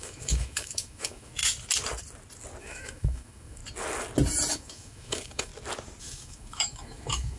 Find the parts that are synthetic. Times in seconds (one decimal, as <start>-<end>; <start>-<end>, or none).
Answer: 0.0-1.4; 2.6-3.6; 4.5-5.5; 6.0-7.4